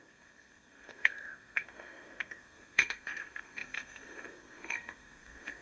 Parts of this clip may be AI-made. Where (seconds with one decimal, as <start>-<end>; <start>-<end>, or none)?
0.0-5.6